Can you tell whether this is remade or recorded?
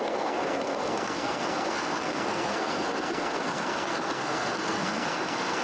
remade